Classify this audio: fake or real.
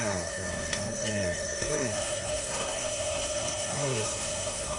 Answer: fake